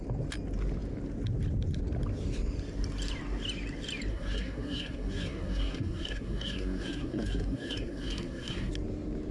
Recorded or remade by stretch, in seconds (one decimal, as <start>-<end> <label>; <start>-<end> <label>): 0.0-4.1 recorded; 4.1-8.7 remade; 8.7-9.3 recorded